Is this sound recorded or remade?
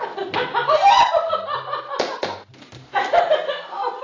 recorded